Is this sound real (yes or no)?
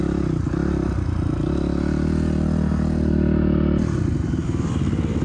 yes